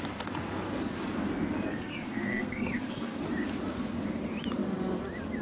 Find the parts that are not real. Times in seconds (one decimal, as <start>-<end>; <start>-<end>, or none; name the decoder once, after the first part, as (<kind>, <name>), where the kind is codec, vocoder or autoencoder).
1.7-3.2 (codec, SNAC)